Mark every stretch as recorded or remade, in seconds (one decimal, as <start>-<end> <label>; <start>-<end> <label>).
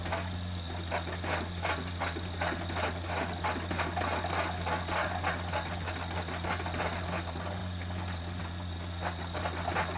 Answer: 0.0-10.0 recorded